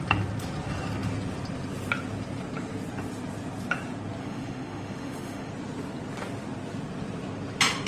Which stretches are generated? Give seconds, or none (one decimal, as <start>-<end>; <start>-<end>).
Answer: 4.2-5.5